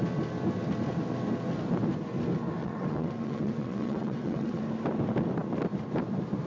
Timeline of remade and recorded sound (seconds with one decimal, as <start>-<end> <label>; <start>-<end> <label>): 0.0-2.6 recorded; 2.6-4.6 remade; 4.6-6.5 recorded